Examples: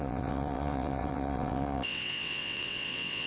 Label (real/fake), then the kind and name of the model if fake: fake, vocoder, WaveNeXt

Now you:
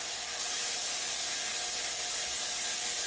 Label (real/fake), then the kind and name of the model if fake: real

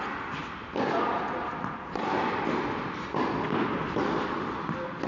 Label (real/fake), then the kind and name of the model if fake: real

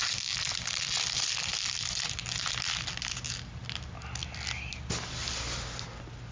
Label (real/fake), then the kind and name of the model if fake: real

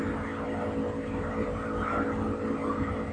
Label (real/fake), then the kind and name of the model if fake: real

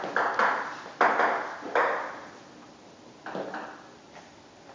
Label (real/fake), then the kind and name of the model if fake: real